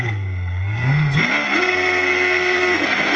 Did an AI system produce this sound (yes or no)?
yes